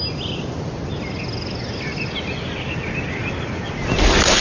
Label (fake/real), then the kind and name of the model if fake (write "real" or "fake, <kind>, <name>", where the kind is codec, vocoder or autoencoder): real